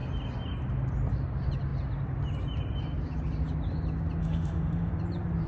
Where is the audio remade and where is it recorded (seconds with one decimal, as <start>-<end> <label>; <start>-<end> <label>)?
0.0-4.2 recorded; 4.2-4.9 remade; 4.9-5.5 recorded